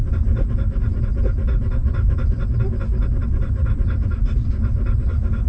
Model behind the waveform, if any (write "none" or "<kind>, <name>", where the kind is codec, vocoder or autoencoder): none